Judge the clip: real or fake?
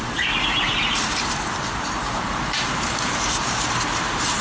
fake